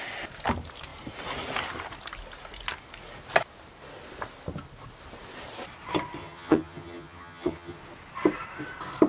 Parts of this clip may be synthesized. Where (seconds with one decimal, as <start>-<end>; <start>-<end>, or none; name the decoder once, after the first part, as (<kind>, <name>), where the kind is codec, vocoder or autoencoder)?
6.2-7.8 (vocoder, HiFi-GAN)

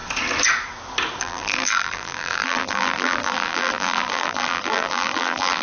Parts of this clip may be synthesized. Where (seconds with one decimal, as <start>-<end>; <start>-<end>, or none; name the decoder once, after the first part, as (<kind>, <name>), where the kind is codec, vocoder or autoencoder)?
1.2-5.6 (vocoder, BigVGAN v2)

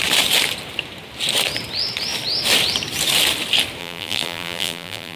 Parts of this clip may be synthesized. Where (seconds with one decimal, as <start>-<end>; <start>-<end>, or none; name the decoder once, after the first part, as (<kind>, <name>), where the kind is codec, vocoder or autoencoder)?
3.8-5.2 (vocoder, BigVGAN v2)

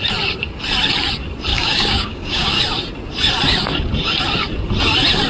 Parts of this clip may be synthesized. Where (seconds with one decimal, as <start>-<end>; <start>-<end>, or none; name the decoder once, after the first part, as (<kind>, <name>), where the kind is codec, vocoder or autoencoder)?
1.5-2.6 (codec, DAC)

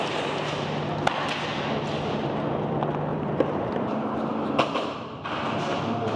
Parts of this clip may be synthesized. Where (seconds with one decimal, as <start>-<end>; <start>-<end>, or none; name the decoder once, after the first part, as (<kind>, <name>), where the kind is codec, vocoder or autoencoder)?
3.1-4.3 (vocoder, BigVGAN v2)